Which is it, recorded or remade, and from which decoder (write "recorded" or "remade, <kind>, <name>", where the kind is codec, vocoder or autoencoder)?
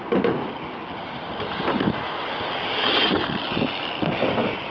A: recorded